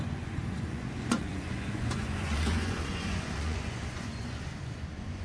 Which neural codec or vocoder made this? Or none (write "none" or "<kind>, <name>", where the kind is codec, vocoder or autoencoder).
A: vocoder, Vocos